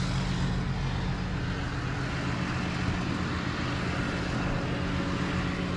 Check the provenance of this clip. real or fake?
real